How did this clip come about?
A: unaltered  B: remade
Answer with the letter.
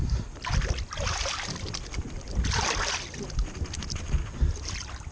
A